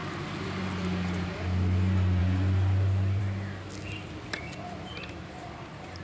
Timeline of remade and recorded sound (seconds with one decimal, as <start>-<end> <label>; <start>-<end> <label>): 0.0-6.0 recorded